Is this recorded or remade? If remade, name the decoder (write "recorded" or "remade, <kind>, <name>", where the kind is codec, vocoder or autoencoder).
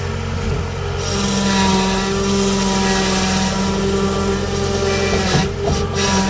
recorded